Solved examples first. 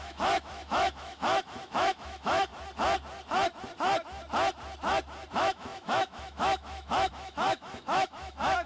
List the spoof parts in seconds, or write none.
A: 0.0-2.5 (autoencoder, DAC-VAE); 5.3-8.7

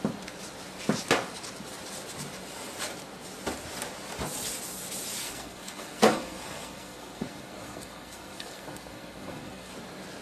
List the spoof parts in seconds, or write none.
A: 5.2-9.7 (codec, SNAC)

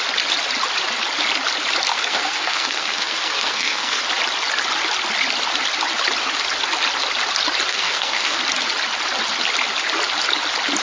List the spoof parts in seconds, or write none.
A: 1.9-4.0 (codec, SNAC); 7.7-8.4

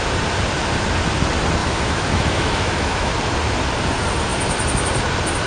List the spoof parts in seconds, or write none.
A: 1.6-3.1 (autoencoder, DAC-VAE)

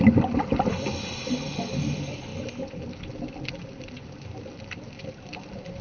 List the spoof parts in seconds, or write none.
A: none

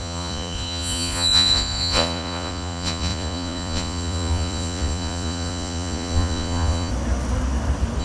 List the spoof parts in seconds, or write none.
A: 0.0-6.9 (vocoder, Vocos)